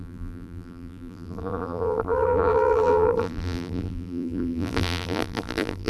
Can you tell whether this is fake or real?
fake